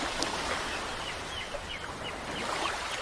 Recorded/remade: recorded